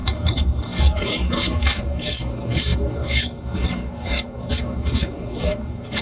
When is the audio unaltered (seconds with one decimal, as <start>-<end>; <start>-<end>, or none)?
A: none